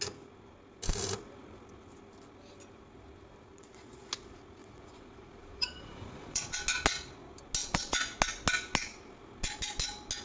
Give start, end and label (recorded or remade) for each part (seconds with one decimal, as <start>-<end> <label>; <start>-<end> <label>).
0.0-3.5 recorded; 3.5-4.1 remade; 4.1-4.6 recorded; 4.6-6.6 remade; 6.6-7.6 recorded; 7.6-8.2 remade; 8.2-10.2 recorded